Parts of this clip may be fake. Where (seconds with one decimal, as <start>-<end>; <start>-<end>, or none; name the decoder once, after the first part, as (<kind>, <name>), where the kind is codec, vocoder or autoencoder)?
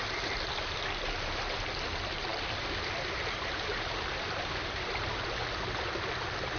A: none